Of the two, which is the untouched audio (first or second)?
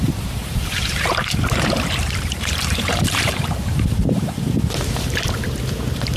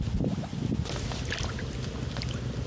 second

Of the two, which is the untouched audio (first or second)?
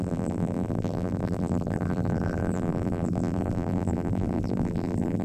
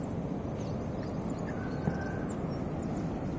second